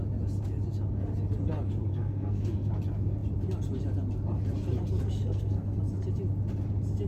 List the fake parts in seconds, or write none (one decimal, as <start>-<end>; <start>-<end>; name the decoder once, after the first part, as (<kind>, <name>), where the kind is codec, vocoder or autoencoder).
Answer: 1.9-2.7 (codec, SNAC); 5.2-5.8